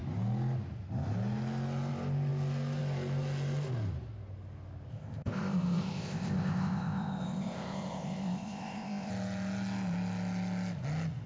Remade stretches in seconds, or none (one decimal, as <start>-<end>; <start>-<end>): 4.9-9.1